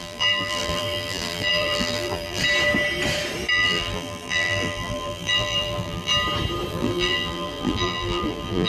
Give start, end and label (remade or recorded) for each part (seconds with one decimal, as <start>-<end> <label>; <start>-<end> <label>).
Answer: 0.0-2.4 remade; 2.4-3.5 recorded; 3.5-6.1 remade; 6.1-6.7 recorded; 6.7-8.7 remade

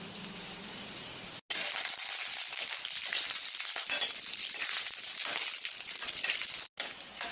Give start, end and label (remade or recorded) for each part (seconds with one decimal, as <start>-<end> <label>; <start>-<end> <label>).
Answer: 0.0-4.4 recorded; 4.4-5.5 remade; 5.5-7.3 recorded